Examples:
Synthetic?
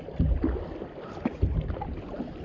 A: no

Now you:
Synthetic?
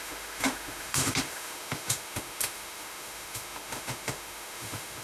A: yes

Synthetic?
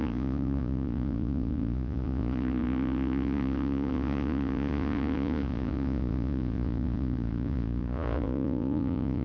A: yes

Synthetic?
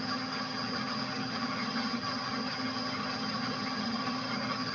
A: yes